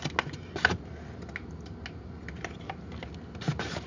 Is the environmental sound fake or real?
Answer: real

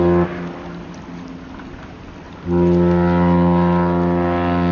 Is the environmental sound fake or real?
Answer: real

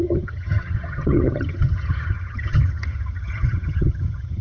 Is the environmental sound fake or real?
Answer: fake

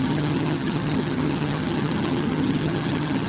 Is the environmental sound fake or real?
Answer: fake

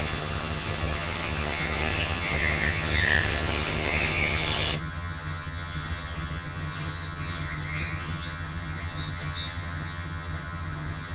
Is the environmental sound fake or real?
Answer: fake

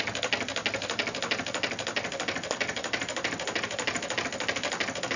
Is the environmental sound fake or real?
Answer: real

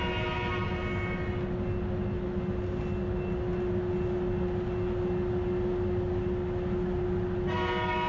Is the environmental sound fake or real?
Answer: real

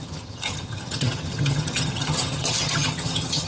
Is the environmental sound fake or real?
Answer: fake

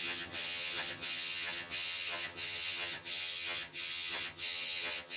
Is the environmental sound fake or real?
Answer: fake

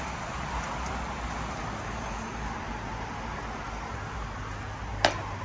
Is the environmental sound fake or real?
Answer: real